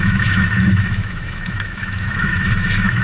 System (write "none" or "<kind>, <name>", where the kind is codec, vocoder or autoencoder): autoencoder, DAC-VAE